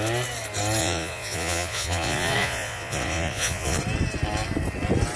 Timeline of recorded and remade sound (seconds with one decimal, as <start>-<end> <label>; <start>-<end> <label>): 0.0-0.8 recorded; 0.8-3.8 remade; 3.8-5.2 recorded